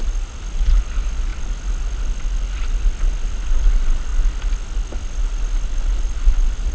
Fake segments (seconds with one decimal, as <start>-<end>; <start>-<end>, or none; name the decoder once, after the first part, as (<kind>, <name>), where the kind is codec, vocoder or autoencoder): 0.0-1.3 (vocoder, BigVGAN v2); 3.1-4.1; 4.9-6.7